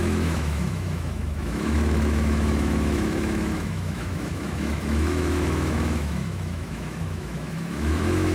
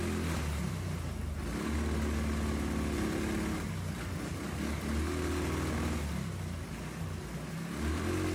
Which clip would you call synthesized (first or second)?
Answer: first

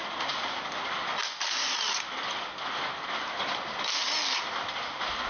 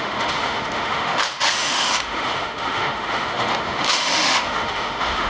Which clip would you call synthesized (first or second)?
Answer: second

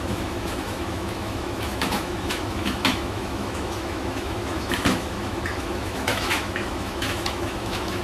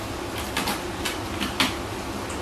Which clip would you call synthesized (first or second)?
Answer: first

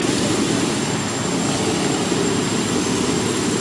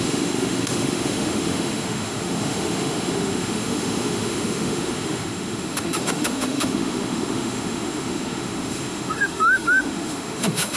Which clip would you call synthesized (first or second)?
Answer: second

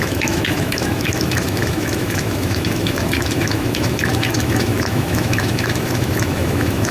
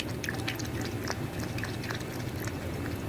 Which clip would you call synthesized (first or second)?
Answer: first